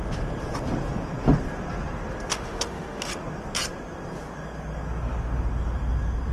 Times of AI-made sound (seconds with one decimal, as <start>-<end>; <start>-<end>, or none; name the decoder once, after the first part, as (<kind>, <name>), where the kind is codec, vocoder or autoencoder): 2.3-3.1 (autoencoder, DAC-VAE)

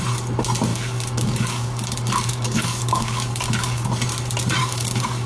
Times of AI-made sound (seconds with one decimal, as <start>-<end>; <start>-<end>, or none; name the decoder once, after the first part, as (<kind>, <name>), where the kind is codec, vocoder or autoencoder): 0.7-3.9 (codec, DAC); 4.6-5.3

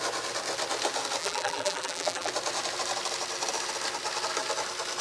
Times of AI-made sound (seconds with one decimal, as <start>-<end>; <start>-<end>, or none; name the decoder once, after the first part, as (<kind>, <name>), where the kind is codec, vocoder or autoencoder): 1.2-2.3 (vocoder, BigVGAN v2)

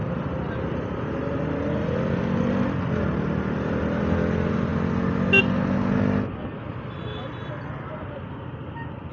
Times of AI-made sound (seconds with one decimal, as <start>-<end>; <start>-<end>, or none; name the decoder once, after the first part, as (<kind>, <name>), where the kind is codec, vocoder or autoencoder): none

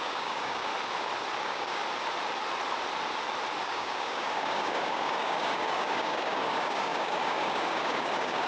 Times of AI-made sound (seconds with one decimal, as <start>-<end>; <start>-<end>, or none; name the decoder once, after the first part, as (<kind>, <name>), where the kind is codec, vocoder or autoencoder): 0.0-0.7 (codec, DAC); 1.4-1.8; 3.6-8.5

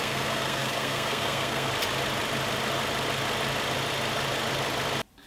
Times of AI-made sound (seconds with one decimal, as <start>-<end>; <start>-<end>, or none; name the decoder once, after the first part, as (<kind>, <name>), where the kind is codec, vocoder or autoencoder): 0.0-1.7 (codec, SNAC)

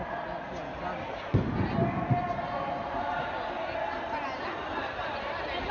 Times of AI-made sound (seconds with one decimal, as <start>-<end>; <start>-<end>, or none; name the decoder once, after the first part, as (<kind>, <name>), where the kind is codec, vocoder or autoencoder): none

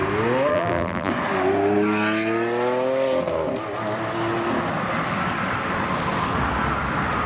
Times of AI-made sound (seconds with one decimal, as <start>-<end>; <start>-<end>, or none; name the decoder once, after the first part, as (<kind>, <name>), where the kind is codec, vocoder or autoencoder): 0.5-1.1 (vocoder, BigVGAN v2)